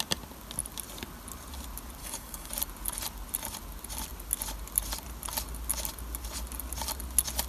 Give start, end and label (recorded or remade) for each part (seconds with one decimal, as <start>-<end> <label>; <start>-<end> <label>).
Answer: 0.0-2.0 recorded; 2.0-2.5 remade; 2.5-7.5 recorded